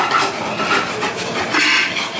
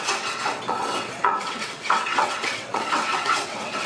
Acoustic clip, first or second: first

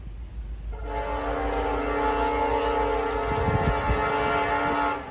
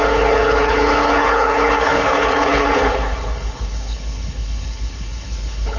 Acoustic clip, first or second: first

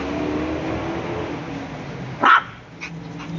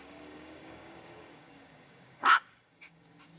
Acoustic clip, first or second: first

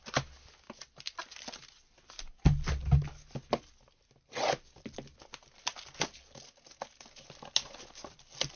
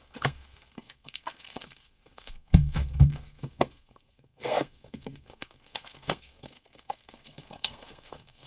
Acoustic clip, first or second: first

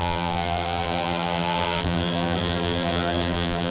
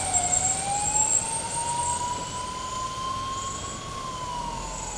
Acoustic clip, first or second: second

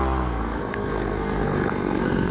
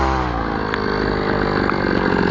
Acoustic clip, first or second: second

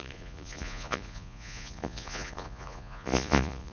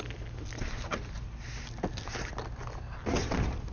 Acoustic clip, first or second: second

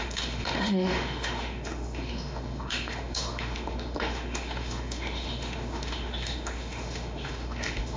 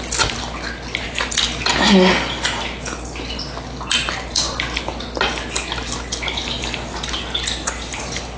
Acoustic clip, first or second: second